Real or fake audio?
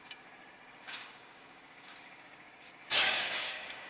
fake